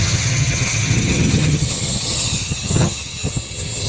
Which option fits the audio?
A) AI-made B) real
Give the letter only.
A